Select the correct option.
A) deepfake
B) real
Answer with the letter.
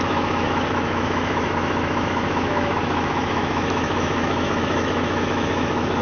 A